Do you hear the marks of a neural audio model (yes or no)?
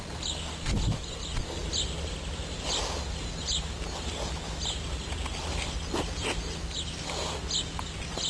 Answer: no